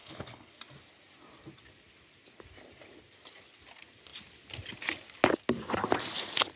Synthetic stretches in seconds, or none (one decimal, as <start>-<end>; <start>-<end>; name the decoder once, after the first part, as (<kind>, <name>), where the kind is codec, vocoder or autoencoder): 0.0-0.5 (codec, HILCodec)